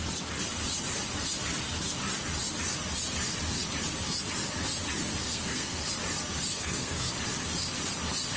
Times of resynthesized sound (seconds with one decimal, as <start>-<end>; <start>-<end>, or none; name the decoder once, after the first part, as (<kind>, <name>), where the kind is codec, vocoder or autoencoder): 5.2-5.9 (codec, SNAC); 6.5-7.1